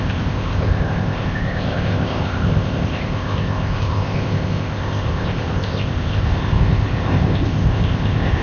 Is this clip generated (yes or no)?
yes